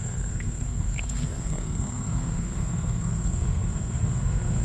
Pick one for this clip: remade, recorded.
remade